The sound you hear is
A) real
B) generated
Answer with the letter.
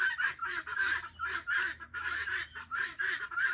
B